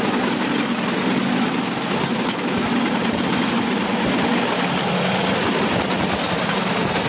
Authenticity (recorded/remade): recorded